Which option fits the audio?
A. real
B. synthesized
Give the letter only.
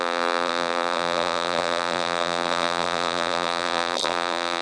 B